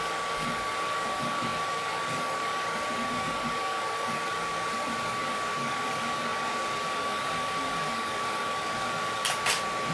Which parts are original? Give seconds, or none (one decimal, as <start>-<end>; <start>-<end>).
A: 9.2-9.9